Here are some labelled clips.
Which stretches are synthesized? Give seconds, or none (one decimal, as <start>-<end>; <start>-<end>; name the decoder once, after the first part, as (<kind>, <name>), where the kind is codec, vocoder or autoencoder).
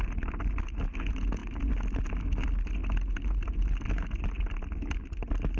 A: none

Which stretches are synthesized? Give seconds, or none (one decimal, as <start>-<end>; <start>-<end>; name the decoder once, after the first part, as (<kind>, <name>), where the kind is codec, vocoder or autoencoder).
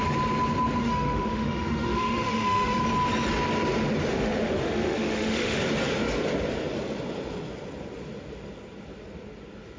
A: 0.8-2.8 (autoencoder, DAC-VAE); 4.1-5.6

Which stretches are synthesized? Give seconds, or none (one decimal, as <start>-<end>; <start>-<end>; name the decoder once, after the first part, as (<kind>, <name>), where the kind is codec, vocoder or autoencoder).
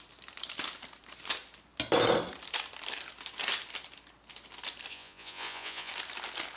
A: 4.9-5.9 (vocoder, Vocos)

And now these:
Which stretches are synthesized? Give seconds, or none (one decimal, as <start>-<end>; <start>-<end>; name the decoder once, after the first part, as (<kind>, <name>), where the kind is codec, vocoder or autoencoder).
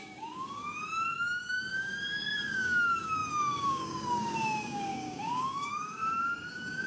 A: 0.0-6.0 (codec, DAC); 6.5-6.9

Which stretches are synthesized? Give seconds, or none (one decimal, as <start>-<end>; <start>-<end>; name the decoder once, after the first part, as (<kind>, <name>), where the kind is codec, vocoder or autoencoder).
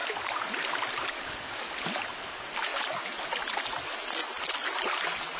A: none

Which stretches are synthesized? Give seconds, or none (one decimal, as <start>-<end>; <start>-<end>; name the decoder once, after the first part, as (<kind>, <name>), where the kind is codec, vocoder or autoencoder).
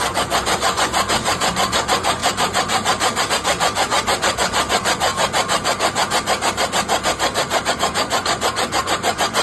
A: 0.0-2.2 (vocoder, Vocos); 3.3-5.1; 7.7-9.4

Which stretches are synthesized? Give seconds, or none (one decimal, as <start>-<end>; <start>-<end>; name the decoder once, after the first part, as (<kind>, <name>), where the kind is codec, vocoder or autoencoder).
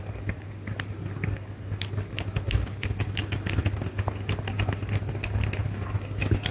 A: none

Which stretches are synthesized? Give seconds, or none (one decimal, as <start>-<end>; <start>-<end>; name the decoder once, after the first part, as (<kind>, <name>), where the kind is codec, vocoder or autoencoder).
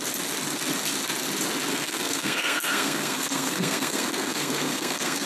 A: 1.7-5.3 (codec, SNAC)